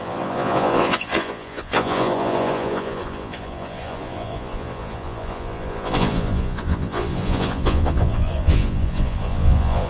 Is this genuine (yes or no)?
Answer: no